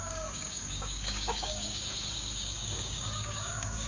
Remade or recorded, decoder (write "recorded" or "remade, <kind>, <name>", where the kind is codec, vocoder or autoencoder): remade, codec, DAC